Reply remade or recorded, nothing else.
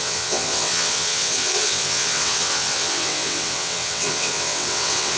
remade